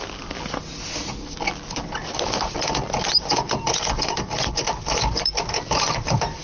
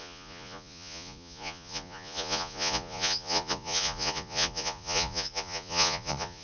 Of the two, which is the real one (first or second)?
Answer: first